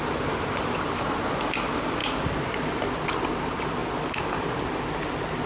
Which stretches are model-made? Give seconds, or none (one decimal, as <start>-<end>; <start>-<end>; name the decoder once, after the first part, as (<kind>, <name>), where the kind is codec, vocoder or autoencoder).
2.0-3.1 (vocoder, BigVGAN v2)